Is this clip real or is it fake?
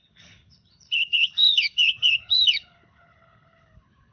fake